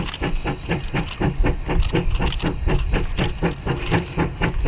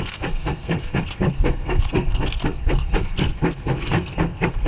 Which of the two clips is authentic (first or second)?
first